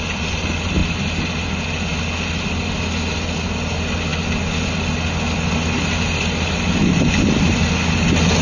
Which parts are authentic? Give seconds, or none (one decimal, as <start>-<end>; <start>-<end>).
0.0-8.4